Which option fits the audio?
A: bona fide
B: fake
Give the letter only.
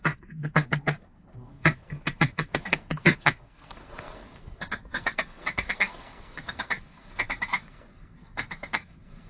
B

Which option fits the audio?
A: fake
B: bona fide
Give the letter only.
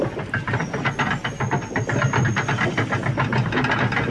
B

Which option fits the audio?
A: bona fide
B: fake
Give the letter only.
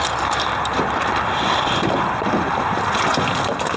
A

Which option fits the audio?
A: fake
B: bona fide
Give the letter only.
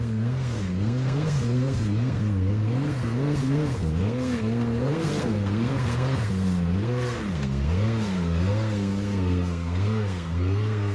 A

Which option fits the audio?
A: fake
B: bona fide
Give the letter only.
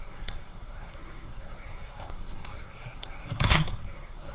A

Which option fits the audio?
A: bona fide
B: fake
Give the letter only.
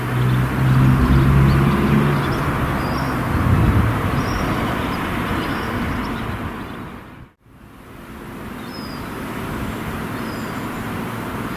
A